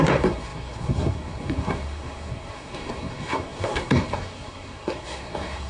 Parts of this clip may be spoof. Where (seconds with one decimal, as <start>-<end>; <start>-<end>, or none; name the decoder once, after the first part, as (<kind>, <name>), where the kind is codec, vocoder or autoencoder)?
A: 0.0-5.7 (codec, SNAC)